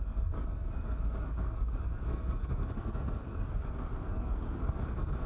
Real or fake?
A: fake